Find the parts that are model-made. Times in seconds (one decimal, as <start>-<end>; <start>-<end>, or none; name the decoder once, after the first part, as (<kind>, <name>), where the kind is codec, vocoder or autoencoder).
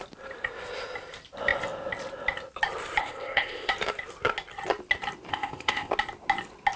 3.0-3.7 (codec, ZipCodec); 5.3-5.9